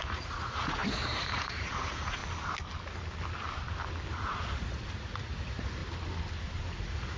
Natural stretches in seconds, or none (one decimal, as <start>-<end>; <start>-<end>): 2.2-4.1; 5.8-6.8